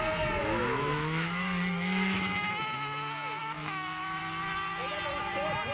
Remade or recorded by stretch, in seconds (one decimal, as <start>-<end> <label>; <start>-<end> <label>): 0.0-0.4 recorded; 0.4-2.5 remade; 2.5-3.4 recorded; 3.4-4.2 remade; 4.2-5.7 recorded